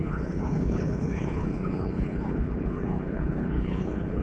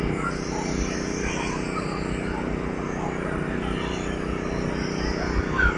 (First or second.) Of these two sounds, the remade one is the first